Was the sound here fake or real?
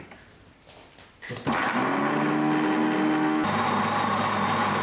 real